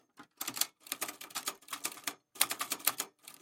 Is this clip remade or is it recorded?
remade